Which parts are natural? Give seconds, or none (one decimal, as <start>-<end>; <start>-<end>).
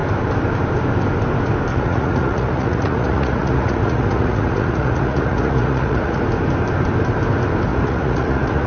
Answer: 0.0-1.7; 6.2-7.7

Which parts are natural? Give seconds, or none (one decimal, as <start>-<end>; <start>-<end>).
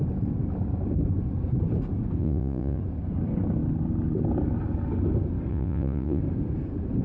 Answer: 0.0-2.2; 2.8-5.5; 6.2-7.0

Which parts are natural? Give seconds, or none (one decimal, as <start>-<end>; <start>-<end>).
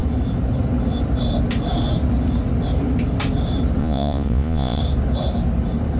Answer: 0.0-3.8; 4.8-6.0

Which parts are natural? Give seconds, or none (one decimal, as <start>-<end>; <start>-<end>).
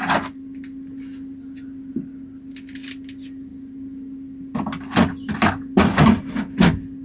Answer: 0.0-7.0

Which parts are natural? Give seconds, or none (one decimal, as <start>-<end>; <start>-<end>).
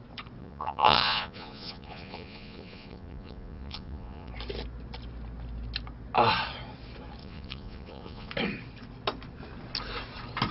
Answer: 0.0-0.4; 4.3-7.2; 8.3-10.5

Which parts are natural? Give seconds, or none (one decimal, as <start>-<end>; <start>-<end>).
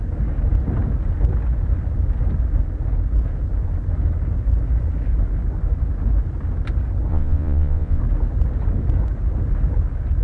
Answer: 0.0-7.1; 8.0-10.2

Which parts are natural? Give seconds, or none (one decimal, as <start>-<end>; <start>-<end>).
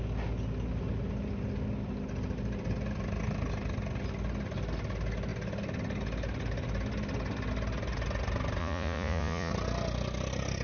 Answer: 0.0-8.6; 9.5-10.6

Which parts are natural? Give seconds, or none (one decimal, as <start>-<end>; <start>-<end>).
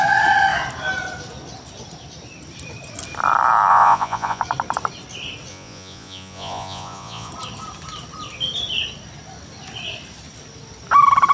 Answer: 0.0-3.7; 4.4-5.5; 7.3-11.3